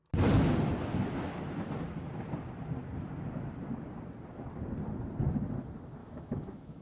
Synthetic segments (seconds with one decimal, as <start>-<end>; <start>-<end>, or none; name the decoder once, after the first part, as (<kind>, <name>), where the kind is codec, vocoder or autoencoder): 6.0-6.8 (autoencoder, DAC-VAE)